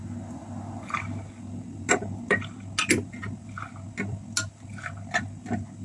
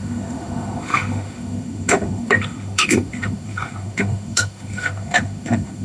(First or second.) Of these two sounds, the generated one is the second